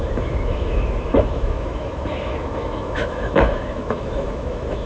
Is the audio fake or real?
fake